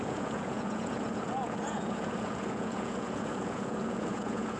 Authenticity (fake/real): fake